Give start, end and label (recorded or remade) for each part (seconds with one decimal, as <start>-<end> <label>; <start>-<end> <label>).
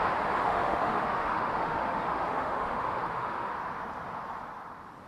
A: 0.0-0.4 recorded; 0.4-3.5 remade; 3.5-5.1 recorded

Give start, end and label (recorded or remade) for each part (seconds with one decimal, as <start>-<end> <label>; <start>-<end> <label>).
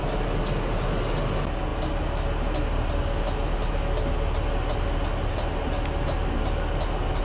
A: 0.0-7.2 recorded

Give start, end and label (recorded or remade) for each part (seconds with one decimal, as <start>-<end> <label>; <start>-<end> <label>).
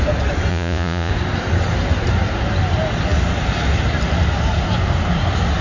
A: 0.0-0.5 recorded; 0.5-1.1 remade; 1.1-5.6 recorded